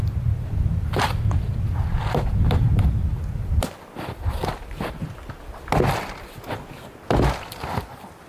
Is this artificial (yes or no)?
no